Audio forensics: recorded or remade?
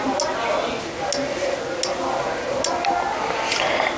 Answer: recorded